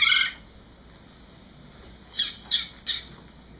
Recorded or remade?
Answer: recorded